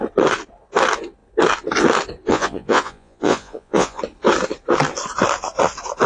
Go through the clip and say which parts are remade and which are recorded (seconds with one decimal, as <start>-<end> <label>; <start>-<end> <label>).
0.0-2.3 recorded; 2.3-4.0 remade; 4.0-6.1 recorded